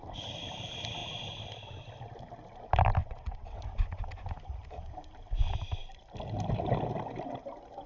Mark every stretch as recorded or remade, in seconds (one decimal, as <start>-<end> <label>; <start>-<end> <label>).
0.0-3.0 recorded; 3.0-3.6 remade; 3.6-7.9 recorded